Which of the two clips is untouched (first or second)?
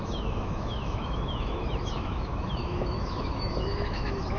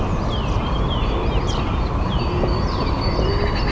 second